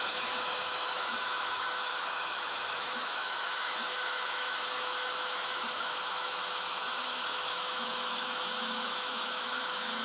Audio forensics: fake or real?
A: fake